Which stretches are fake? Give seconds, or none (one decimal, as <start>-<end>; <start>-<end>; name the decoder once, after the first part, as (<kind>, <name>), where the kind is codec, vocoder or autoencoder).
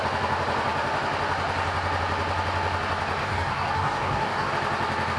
3.2-4.5 (codec, DAC)